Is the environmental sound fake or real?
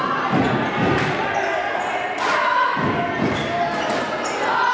real